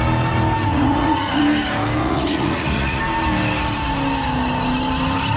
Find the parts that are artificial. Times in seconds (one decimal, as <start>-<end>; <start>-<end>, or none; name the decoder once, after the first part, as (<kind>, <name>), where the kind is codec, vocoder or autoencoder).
0.7-1.4 (vocoder, Vocos); 2.0-3.0